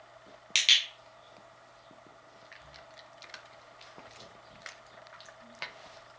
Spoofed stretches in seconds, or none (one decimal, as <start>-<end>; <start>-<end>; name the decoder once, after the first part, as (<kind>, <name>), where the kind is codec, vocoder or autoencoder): none